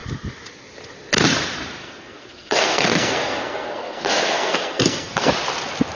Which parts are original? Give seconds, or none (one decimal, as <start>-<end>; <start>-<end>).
0.0-1.8; 5.3-5.9